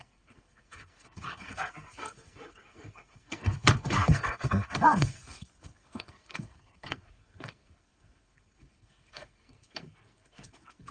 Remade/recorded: remade